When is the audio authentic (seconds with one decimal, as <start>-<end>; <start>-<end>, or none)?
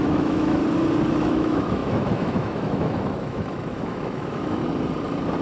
0.6-1.2; 4.6-5.4